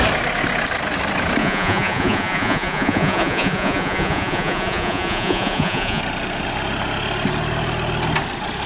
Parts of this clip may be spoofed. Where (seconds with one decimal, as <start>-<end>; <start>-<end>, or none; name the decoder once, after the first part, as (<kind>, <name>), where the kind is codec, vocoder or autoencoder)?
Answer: 1.4-6.0 (vocoder, Vocos)